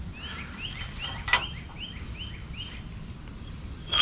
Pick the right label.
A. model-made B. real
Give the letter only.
B